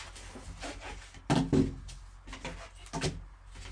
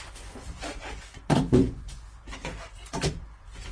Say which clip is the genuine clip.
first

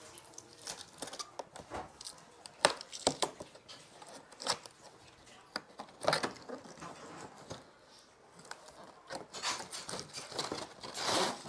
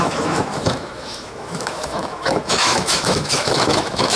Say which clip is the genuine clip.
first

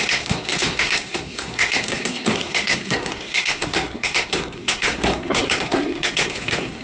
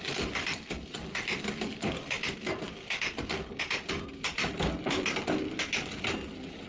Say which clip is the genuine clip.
second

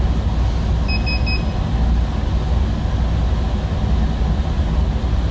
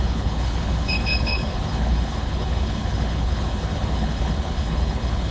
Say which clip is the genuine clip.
first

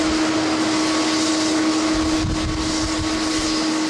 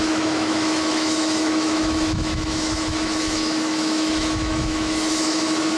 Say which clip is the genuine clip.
first